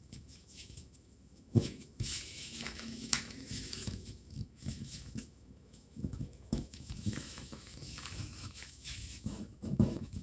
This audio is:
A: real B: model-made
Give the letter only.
B